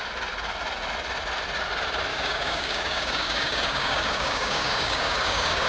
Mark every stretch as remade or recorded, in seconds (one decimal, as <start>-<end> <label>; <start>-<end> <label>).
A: 0.0-2.1 recorded; 2.1-5.7 remade